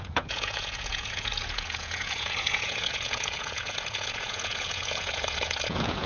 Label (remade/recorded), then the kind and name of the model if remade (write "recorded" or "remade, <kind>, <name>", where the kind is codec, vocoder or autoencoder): remade, vocoder, Vocos